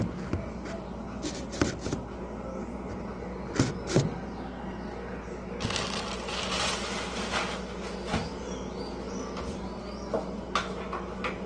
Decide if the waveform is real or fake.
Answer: real